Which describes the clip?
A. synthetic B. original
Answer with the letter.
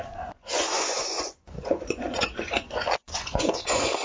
A